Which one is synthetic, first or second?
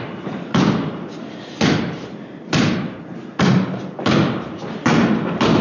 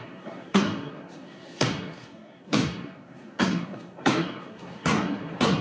second